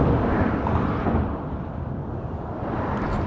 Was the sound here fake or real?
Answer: fake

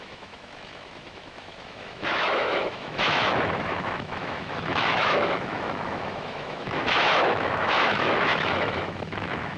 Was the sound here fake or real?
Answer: fake